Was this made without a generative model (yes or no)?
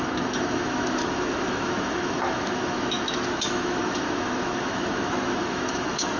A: no